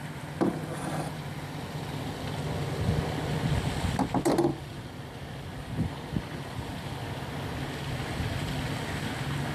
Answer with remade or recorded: recorded